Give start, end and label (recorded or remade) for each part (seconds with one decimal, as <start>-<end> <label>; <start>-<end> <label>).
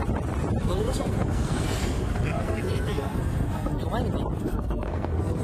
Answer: 0.0-0.6 recorded; 0.6-3.8 remade; 3.8-4.4 recorded; 4.4-5.4 remade